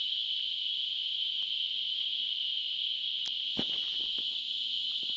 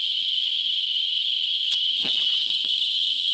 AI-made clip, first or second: second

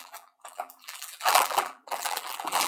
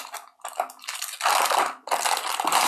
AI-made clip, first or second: first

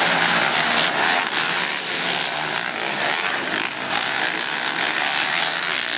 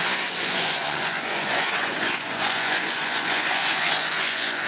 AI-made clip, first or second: second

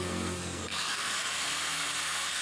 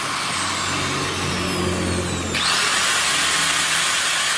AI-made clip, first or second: first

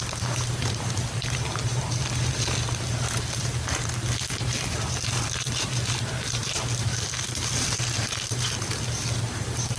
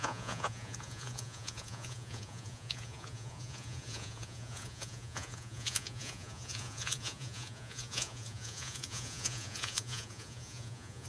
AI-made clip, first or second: second